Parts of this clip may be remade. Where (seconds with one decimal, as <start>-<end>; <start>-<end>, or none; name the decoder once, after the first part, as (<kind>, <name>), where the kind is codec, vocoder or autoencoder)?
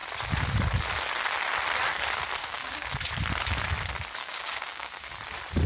2.4-2.9 (codec, DAC); 4.2-5.1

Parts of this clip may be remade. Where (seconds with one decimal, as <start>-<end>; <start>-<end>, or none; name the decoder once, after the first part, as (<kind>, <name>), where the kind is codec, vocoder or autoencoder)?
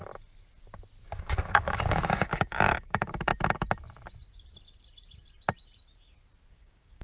1.2-3.3 (codec, DAC); 6.5-7.0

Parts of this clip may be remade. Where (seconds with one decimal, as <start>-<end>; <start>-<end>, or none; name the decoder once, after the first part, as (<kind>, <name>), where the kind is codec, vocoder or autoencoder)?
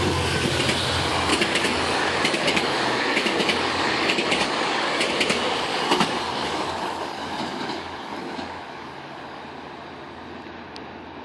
1.3-5.1 (codec, DAC); 5.7-9.4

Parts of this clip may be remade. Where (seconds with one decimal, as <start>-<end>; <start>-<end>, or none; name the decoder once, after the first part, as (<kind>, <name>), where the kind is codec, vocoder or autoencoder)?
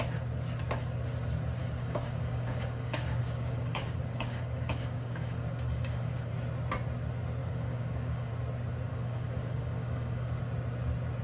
1.6-6.3 (codec, DAC); 7.4-8.3; 8.9-10.4